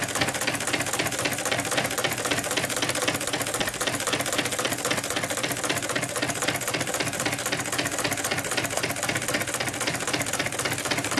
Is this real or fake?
real